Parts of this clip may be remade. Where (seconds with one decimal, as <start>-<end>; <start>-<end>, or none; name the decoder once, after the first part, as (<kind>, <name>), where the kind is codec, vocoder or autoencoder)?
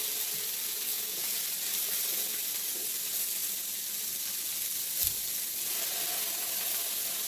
0.9-1.4 (vocoder, Vocos)